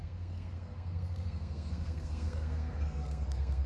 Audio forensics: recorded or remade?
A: remade